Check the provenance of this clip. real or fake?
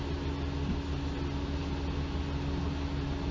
real